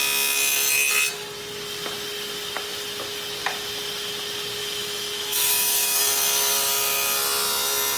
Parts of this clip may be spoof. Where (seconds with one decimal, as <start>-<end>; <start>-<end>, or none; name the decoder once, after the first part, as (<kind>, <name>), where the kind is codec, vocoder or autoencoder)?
4.6-6.0 (autoencoder, DAC-VAE)

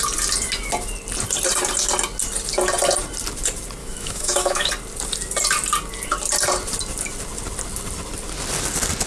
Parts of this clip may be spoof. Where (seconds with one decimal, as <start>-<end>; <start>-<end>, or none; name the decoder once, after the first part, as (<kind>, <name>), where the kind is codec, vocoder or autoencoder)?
3.8-4.7 (autoencoder, DAC-VAE)

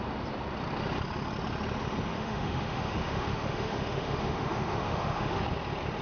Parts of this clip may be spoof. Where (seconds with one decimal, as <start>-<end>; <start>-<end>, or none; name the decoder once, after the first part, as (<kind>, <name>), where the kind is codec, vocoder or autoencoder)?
2.1-5.4 (autoencoder, DAC-VAE)

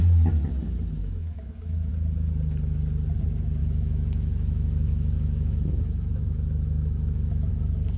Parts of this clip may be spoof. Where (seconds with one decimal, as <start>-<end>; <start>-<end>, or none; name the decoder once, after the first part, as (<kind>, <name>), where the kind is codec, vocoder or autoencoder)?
1.0-1.9 (autoencoder, DAC-VAE); 3.6-7.5

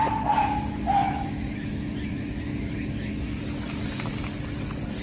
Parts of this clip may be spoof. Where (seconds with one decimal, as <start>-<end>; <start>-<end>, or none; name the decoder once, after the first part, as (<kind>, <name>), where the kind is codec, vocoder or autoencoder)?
0.4-3.4 (autoencoder, DAC-VAE)

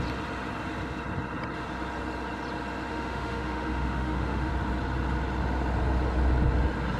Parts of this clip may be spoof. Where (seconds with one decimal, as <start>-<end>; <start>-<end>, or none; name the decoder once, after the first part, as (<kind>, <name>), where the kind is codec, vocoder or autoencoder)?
2.9-4.5 (autoencoder, DAC-VAE)

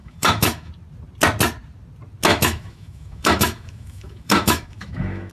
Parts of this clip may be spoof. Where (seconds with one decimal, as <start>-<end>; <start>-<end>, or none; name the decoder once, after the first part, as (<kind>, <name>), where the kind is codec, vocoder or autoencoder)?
0.0-0.7 (autoencoder, DAC-VAE); 2.3-5.3